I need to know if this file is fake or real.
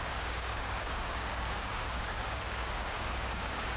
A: fake